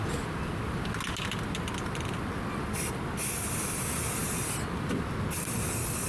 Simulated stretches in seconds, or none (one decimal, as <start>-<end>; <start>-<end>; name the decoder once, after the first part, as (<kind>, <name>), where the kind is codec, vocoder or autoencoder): none